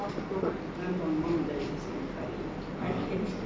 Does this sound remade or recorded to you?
recorded